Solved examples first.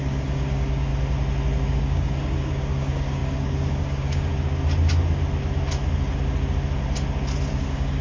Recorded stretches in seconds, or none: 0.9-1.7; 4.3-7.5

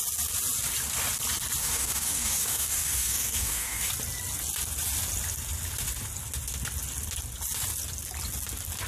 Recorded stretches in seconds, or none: 0.0-1.6; 3.9-8.9

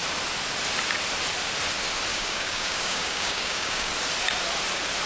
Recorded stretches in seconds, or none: 0.0-2.1; 3.9-5.1

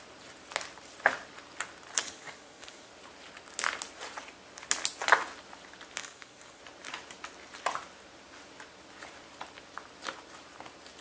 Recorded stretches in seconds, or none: 0.0-2.0; 2.9-6.0; 6.6-11.0